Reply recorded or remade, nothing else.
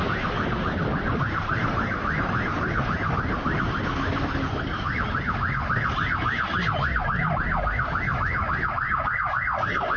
recorded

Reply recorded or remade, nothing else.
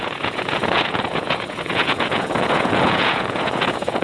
remade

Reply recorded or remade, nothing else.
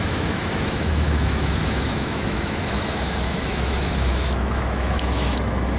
remade